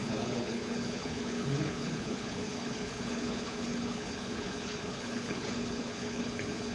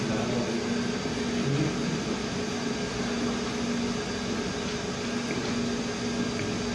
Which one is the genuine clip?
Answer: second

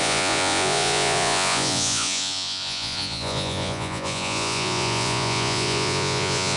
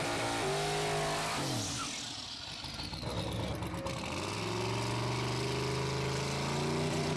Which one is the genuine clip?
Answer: second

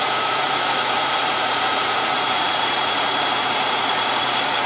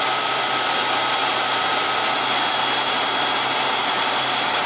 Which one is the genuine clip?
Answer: second